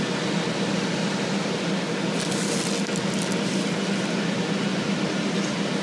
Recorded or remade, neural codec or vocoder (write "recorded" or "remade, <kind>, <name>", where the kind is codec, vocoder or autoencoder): recorded